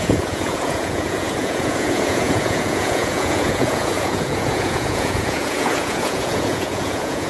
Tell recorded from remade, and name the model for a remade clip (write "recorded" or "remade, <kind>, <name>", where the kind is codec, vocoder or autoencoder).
remade, vocoder, Vocos